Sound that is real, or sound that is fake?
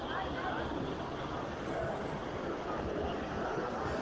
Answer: real